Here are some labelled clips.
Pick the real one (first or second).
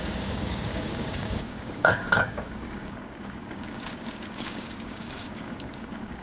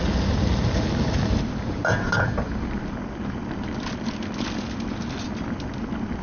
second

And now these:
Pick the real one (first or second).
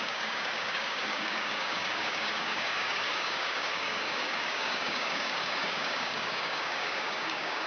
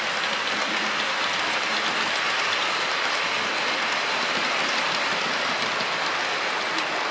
second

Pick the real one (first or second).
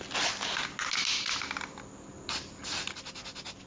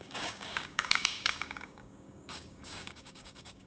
first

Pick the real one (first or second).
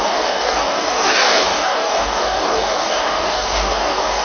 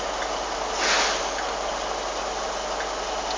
second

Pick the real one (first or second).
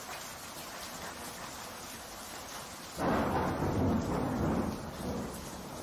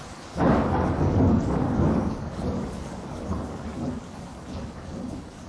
first